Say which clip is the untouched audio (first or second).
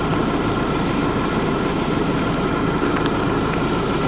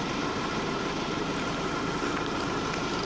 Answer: first